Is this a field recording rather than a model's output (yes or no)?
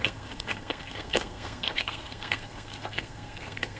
no